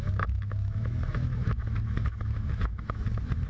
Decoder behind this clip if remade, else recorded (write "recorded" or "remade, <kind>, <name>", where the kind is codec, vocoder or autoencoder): remade, autoencoder, DAC-VAE